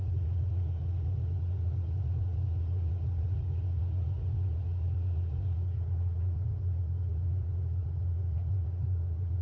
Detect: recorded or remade remade